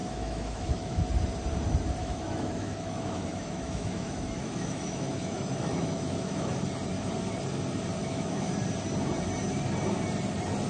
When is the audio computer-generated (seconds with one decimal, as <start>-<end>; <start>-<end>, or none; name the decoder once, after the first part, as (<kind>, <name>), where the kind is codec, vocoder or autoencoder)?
0.0-1.0 (autoencoder, DAC-VAE); 2.0-6.5; 8.0-8.5